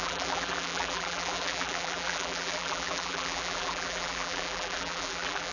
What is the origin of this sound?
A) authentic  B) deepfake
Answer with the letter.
B